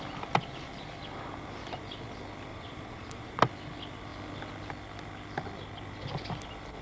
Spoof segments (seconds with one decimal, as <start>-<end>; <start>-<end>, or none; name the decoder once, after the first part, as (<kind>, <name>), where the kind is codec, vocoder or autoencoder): 2.5-3.4 (vocoder, Vocos)